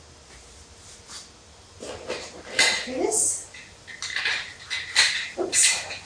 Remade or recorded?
recorded